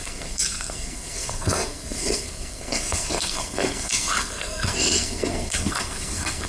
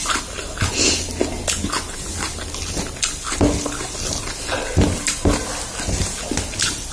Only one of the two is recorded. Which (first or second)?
second